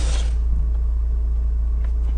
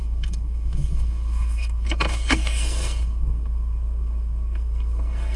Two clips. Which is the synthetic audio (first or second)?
second